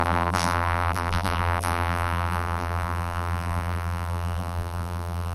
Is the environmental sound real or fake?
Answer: fake